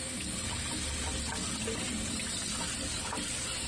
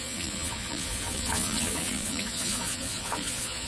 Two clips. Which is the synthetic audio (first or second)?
second